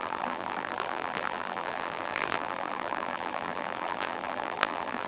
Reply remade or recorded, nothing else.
remade